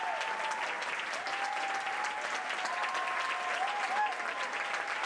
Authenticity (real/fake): real